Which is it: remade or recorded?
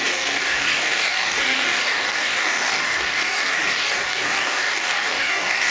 remade